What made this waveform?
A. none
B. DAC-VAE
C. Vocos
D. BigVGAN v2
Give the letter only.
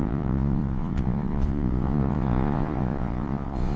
C